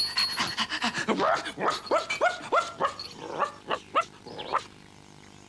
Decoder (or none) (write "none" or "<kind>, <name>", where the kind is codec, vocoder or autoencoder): none